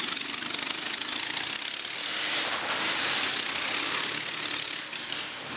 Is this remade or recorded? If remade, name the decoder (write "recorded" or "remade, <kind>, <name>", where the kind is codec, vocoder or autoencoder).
recorded